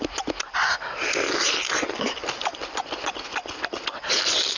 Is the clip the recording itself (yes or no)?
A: yes